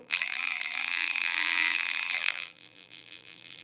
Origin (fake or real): fake